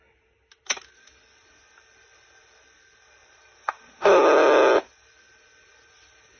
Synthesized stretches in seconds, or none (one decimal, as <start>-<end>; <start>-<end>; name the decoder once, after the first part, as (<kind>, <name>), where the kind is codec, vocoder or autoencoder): none

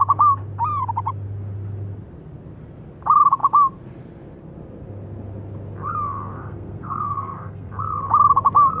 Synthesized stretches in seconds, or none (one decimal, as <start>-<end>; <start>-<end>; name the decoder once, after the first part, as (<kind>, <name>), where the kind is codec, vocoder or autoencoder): 6.4-7.7 (codec, SNAC)

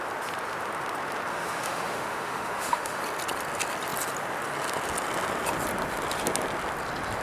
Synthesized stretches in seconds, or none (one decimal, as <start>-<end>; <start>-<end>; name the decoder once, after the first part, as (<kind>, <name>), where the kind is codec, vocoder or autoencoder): 1.3-3.0 (autoencoder, DAC-VAE)

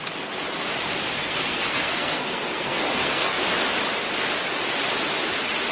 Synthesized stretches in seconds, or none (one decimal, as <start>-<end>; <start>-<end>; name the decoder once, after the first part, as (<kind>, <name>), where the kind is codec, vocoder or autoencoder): 1.2-3.4 (codec, SNAC)

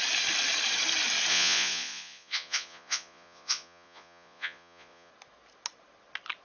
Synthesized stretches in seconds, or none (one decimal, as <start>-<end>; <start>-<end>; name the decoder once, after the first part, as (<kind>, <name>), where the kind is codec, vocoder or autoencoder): 1.3-5.1 (vocoder, Vocos)

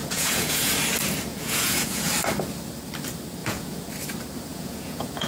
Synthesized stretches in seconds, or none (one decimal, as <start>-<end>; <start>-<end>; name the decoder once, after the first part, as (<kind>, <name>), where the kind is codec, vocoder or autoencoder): 0.0-0.7 (vocoder, Vocos); 1.3-2.1; 3.4-3.9; 4.5-5.3

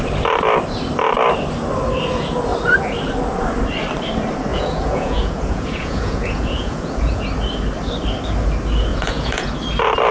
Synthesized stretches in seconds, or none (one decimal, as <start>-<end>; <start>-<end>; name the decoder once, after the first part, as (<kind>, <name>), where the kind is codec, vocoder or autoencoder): 4.5-7.2 (vocoder, Vocos); 8.9-9.5

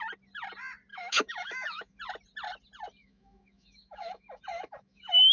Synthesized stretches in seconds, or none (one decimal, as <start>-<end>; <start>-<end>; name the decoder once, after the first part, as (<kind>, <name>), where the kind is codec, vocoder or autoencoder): 0.9-2.0 (autoencoder, DAC-VAE); 3.0-5.3